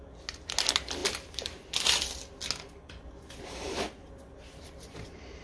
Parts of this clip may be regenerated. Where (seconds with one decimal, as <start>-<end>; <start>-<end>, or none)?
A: none